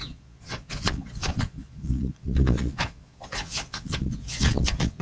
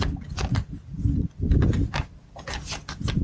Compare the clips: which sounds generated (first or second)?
first